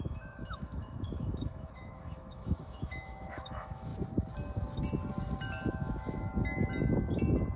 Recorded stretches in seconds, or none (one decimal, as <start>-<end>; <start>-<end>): 3.9-5.7; 6.3-7.6